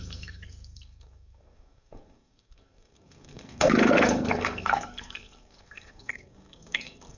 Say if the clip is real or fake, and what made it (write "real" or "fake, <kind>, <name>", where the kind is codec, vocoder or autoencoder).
fake, codec, SNAC